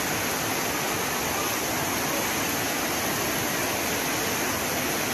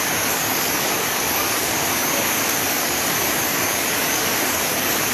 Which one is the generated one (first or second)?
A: second